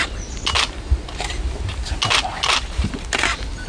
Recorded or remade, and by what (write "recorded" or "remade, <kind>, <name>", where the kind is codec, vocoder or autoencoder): recorded